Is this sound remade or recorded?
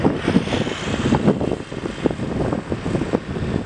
recorded